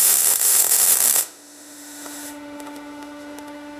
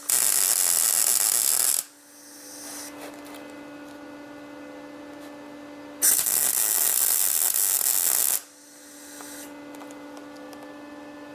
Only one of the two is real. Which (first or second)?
second